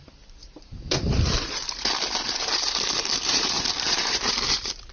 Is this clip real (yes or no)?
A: no